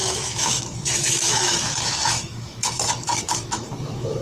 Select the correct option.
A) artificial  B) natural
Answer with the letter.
A